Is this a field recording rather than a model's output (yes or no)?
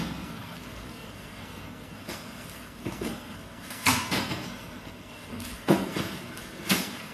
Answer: no